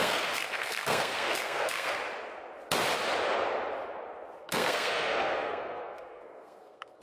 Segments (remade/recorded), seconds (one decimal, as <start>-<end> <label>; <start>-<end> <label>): 0.0-2.0 remade; 2.0-4.4 recorded; 4.4-7.0 remade